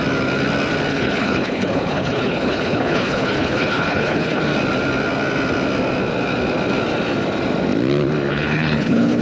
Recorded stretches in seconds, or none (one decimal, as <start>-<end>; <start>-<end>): 0.0-0.9; 4.4-8.3